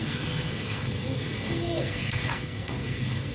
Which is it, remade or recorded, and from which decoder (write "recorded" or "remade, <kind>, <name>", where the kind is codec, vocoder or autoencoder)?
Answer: remade, codec, SNAC